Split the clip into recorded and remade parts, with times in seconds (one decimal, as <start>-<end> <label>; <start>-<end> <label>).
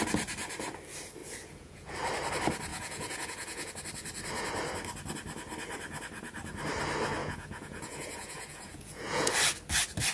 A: 0.0-1.2 recorded; 1.2-1.9 remade; 1.9-2.7 recorded; 2.7-3.7 remade; 3.7-7.2 recorded; 7.2-9.3 remade; 9.3-10.1 recorded